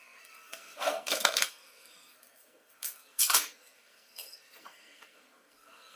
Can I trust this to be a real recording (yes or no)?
no